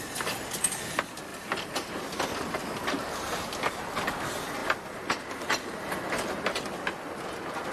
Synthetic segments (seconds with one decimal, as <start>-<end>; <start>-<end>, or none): none